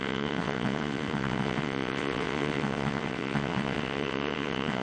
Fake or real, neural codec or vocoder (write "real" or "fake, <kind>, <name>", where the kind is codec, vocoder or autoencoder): fake, vocoder, WaveNeXt